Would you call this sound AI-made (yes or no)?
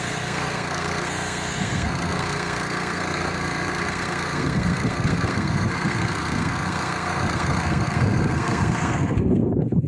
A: yes